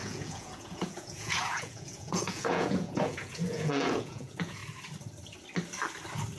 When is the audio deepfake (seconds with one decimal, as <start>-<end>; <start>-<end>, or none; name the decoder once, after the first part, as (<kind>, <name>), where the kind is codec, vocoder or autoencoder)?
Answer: 0.0-4.6 (vocoder, Vocos)